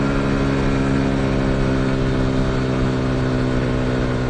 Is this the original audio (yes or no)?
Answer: yes